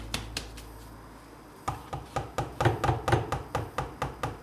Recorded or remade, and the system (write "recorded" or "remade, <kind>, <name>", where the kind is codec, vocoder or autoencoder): recorded